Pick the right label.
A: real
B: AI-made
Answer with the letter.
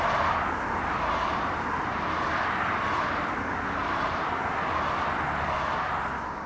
A